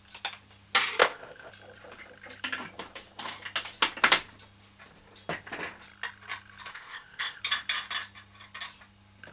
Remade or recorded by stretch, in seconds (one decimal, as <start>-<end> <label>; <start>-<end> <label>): 0.0-1.0 recorded; 1.0-1.5 remade; 1.5-6.7 recorded; 6.7-7.4 remade; 7.4-9.3 recorded